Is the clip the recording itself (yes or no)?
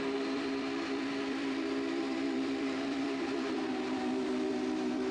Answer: no